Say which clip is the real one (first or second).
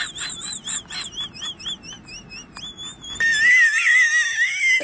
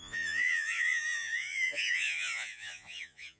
first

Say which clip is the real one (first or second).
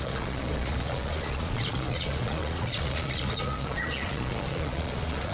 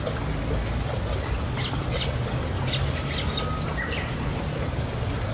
second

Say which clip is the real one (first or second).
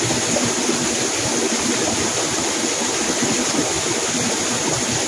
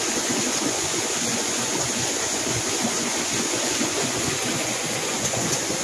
first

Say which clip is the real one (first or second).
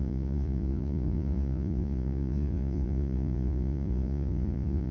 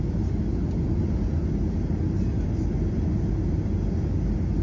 second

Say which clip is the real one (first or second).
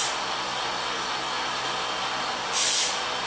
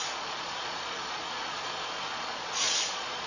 first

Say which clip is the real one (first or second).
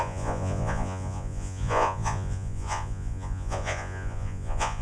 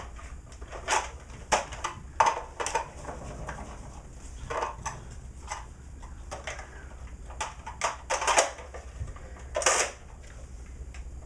second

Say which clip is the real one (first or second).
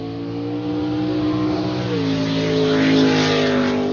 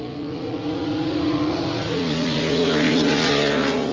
first